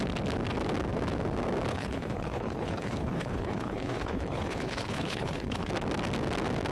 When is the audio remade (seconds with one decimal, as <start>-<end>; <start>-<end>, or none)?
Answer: 1.7-5.7